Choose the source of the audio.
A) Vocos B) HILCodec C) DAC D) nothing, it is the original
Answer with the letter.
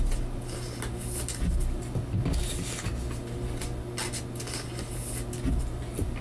D